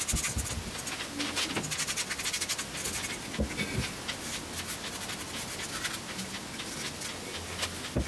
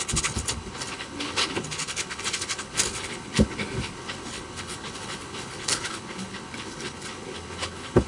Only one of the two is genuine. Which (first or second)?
first